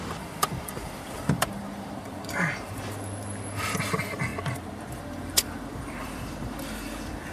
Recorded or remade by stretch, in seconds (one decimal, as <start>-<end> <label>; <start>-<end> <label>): 0.0-4.3 remade; 4.3-4.9 recorded; 4.9-7.3 remade

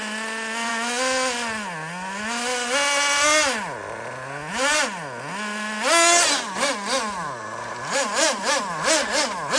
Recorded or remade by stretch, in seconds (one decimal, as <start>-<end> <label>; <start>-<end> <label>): 0.0-7.4 recorded; 7.4-8.6 remade; 8.6-9.6 recorded